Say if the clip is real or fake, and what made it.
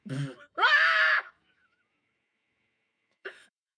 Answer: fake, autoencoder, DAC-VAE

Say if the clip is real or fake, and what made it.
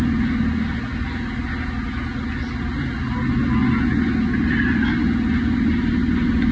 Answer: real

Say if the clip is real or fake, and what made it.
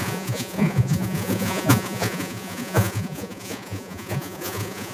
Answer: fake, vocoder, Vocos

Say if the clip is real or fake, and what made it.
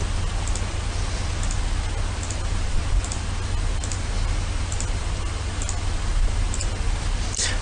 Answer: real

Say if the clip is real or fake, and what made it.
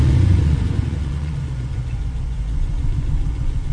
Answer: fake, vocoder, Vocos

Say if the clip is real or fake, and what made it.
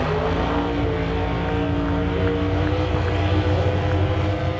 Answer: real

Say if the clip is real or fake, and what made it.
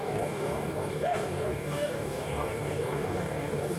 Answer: fake, codec, DAC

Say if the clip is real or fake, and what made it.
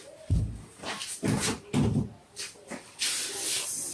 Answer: real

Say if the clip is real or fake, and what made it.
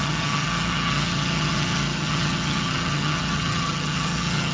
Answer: fake, vocoder, HiFi-GAN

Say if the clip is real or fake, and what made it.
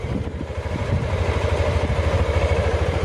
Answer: fake, vocoder, BigVGAN v2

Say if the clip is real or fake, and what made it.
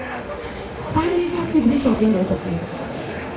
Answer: fake, autoencoder, DAC-VAE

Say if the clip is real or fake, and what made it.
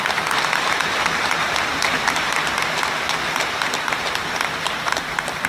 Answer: fake, vocoder, BigVGAN v2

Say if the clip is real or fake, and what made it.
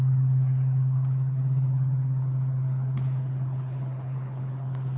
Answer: fake, codec, HILCodec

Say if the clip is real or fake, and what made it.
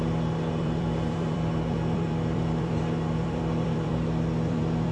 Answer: fake, vocoder, BigVGAN v2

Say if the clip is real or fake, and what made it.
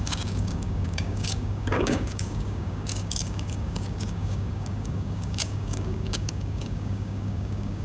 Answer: fake, codec, DAC